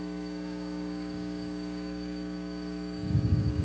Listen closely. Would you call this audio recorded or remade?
remade